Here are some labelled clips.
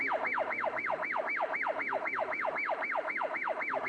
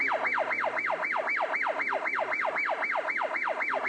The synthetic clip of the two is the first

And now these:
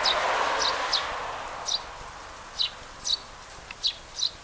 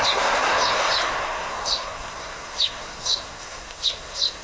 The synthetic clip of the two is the second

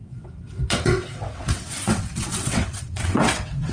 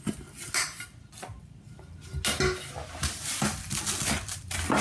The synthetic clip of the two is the first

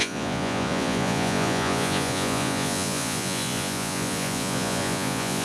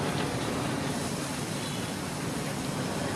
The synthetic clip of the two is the first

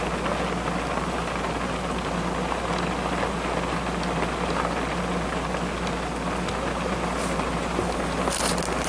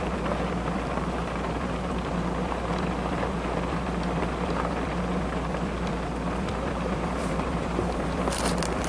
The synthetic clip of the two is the second